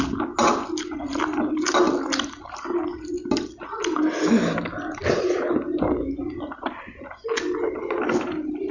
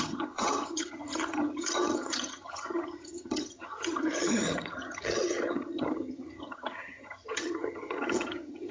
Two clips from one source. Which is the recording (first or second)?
first